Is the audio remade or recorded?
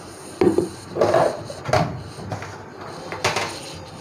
recorded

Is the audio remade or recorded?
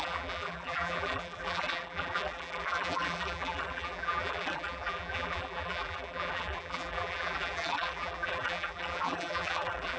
remade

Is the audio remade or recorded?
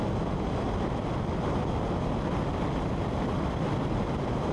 recorded